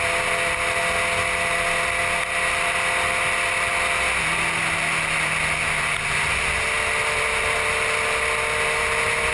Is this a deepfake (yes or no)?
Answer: no